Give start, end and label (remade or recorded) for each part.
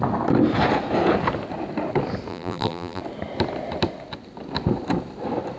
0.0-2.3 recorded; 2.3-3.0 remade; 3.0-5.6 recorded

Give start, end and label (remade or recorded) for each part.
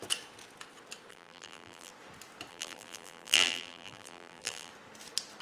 0.0-1.1 recorded; 1.1-1.9 remade; 1.9-2.5 recorded; 2.5-4.7 remade; 4.7-5.4 recorded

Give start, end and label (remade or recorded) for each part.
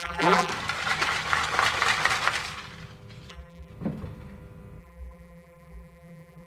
0.0-0.5 remade; 0.5-3.3 recorded; 3.3-3.7 remade; 3.7-4.8 recorded; 4.8-6.5 remade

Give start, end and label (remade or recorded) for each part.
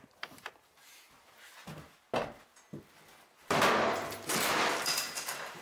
0.0-0.9 remade; 0.9-4.3 recorded; 4.3-5.6 remade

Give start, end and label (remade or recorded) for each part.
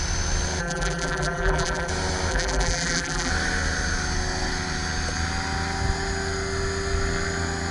0.0-0.6 recorded; 0.6-1.9 remade; 1.9-2.3 recorded; 2.3-3.3 remade; 3.3-7.7 recorded